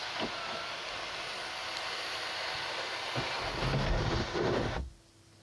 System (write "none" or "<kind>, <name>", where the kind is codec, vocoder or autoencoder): none